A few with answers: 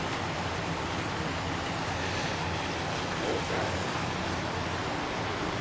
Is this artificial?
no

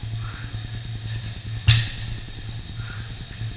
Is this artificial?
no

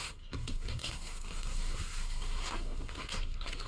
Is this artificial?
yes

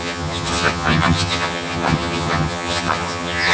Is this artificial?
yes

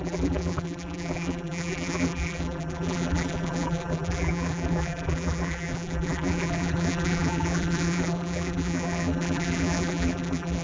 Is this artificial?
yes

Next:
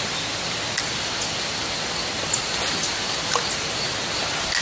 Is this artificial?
no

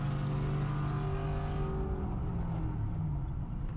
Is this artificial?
no